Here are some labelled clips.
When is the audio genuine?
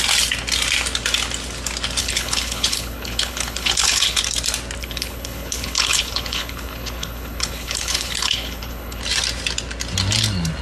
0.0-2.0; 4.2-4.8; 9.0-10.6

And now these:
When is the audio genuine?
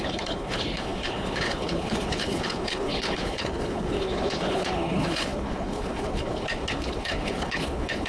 none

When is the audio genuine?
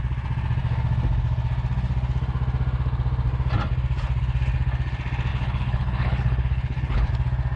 0.0-5.3; 7.1-7.6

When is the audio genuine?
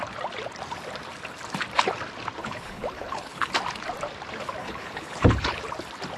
0.0-2.4; 3.5-4.6; 5.6-6.2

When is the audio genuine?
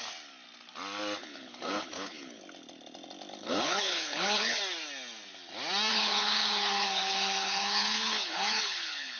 0.0-1.2; 2.4-3.4; 4.6-5.9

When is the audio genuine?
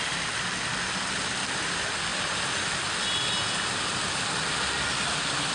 0.0-5.5